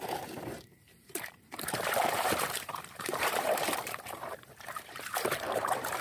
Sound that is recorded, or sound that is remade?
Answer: remade